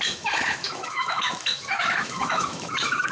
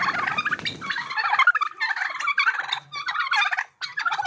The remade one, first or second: first